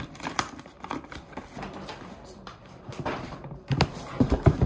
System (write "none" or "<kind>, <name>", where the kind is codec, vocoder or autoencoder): vocoder, BigVGAN v2